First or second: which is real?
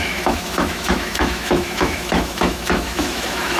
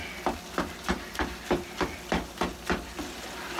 second